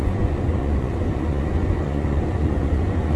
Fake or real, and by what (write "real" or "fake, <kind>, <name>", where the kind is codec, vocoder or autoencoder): fake, vocoder, Vocos